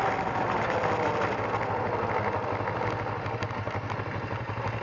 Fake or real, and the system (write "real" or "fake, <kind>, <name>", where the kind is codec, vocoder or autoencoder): real